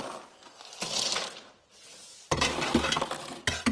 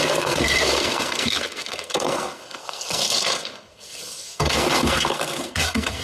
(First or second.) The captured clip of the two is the first